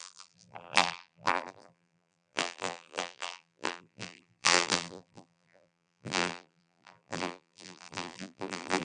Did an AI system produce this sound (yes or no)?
yes